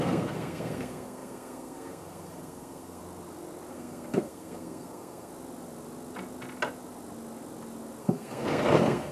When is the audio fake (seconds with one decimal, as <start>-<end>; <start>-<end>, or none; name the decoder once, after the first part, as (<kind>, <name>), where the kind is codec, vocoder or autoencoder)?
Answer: 0.0-3.0 (codec, SNAC); 3.7-5.3; 8.0-9.1